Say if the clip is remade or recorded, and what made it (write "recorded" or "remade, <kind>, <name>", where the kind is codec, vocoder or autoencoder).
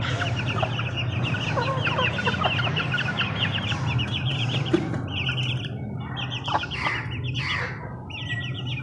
recorded